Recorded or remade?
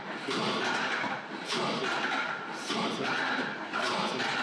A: recorded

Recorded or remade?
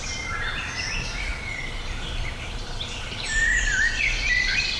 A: remade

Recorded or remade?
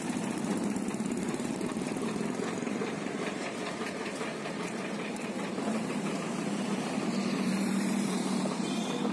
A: remade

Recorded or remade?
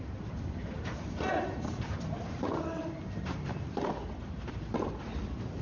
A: remade